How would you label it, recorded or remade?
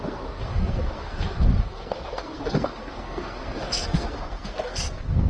remade